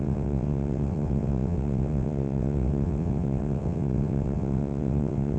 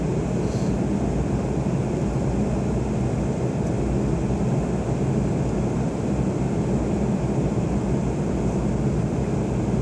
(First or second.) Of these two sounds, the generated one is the first